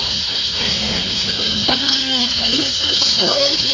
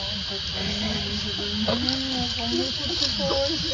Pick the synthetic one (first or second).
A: first